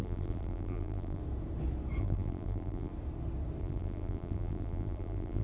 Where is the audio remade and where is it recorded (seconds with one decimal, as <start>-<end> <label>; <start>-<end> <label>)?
0.0-1.2 remade; 1.2-2.0 recorded; 2.0-2.9 remade; 2.9-3.6 recorded; 3.6-5.4 remade